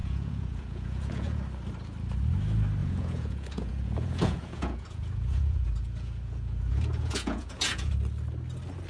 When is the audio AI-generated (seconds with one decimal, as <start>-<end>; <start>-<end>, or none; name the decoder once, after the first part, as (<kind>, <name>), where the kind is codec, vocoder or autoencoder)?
0.0-1.4 (vocoder, Vocos); 2.8-7.9